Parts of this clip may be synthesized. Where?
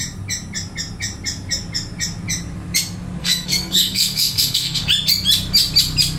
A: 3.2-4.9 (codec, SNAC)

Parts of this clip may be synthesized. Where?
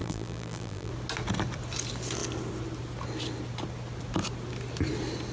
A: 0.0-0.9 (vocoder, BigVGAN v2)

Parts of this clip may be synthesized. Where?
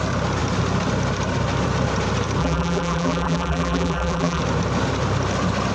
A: 2.4-4.4 (vocoder, BigVGAN v2)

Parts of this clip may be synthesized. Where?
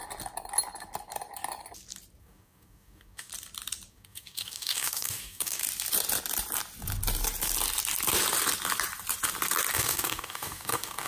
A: 2.2-3.3 (codec, DAC); 3.9-5.6; 9.7-11.1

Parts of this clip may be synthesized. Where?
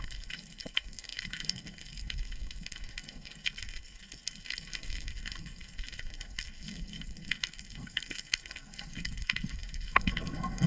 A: 0.0-10.7 (codec, SNAC)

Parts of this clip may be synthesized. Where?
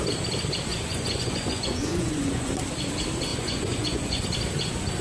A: 0.7-2.5 (vocoder, Vocos); 3.3-4.2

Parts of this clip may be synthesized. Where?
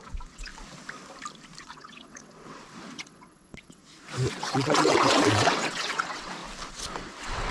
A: 0.0-0.5 (vocoder, WaveNeXt); 1.6-3.8; 4.3-6.4; 7.0-7.5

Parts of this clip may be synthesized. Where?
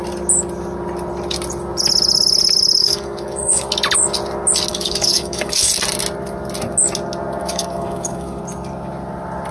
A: 2.8-3.7 (codec, DAC); 4.7-5.7; 7.4-8.4